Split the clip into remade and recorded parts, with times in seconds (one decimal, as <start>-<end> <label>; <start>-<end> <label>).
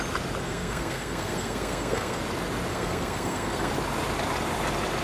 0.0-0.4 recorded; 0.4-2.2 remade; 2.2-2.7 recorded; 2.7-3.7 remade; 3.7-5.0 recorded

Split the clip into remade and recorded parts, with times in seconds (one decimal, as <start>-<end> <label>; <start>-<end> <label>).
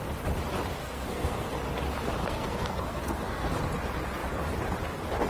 0.0-0.8 recorded; 0.8-1.5 remade; 1.5-2.2 recorded; 2.2-3.5 remade; 3.5-5.3 recorded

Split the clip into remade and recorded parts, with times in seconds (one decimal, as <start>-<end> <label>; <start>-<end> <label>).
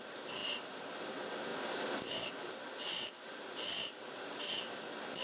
0.0-5.2 recorded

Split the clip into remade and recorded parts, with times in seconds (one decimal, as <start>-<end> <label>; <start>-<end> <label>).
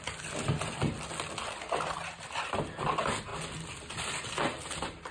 0.0-5.1 recorded